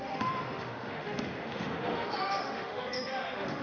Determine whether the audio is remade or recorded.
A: remade